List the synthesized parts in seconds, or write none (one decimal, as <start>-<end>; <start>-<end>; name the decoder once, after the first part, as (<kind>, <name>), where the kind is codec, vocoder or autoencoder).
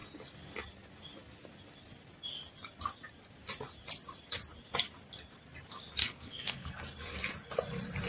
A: 6.0-6.8 (codec, SNAC)